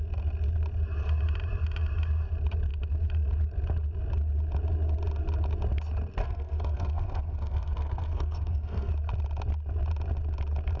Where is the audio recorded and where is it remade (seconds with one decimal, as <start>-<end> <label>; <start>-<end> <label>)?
0.0-6.2 recorded; 6.2-8.9 remade; 8.9-10.8 recorded